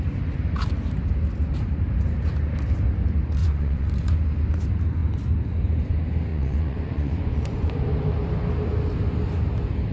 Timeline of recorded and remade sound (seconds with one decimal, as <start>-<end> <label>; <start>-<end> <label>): 0.0-3.4 recorded; 3.4-4.1 remade; 4.1-6.3 recorded; 6.3-7.7 remade; 7.7-9.9 recorded